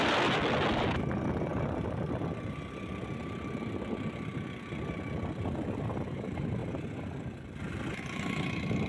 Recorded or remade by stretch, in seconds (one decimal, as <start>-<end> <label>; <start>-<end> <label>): 0.0-8.9 recorded